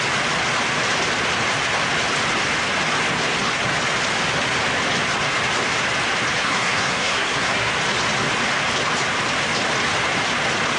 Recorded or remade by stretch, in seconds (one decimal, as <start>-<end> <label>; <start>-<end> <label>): 0.0-6.4 recorded; 6.4-7.7 remade; 7.7-10.8 recorded